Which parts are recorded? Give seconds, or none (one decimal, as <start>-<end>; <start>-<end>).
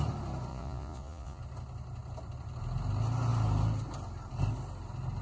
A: 0.0-0.5; 1.4-5.2